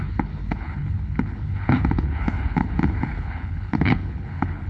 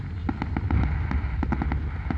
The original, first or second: second